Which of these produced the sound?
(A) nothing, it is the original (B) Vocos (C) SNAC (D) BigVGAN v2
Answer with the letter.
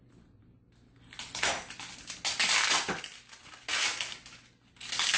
A